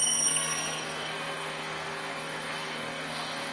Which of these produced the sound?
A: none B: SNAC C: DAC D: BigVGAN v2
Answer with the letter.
B